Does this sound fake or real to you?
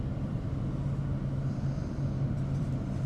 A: fake